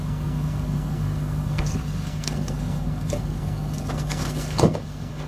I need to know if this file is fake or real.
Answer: fake